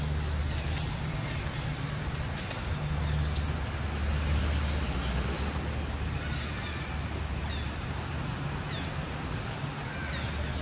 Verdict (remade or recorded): recorded